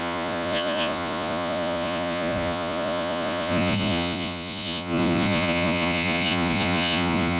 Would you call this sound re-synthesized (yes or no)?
yes